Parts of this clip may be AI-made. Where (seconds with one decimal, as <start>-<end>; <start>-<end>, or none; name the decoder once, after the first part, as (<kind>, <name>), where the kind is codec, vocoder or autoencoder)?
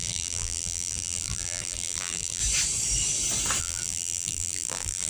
0.0-2.4 (vocoder, BigVGAN v2); 3.6-5.1